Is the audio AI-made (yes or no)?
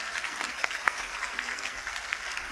yes